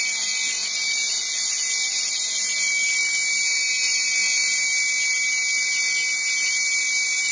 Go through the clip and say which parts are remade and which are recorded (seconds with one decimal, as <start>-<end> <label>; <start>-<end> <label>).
0.0-7.3 recorded